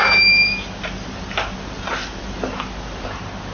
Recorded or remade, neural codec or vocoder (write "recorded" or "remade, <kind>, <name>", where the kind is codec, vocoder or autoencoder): recorded